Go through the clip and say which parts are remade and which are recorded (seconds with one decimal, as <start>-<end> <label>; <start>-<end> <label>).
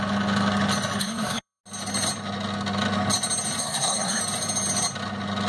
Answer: 0.0-1.0 recorded; 1.0-1.6 remade; 1.6-3.6 recorded; 3.6-4.2 remade; 4.2-5.5 recorded